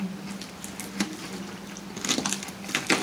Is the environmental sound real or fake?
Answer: real